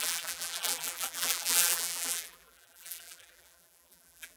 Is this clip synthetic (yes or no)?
yes